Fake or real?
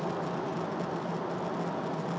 real